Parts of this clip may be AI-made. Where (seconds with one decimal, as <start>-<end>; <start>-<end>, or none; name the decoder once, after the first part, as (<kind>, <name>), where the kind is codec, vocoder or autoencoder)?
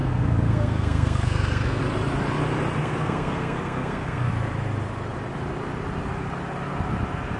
0.0-1.8 (codec, SNAC); 2.8-4.3